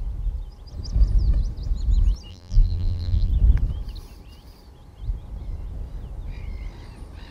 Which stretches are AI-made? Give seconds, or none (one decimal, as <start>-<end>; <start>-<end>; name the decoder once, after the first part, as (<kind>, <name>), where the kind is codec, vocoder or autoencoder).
2.3-3.3 (vocoder, BigVGAN v2)